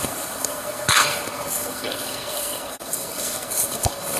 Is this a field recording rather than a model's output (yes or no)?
no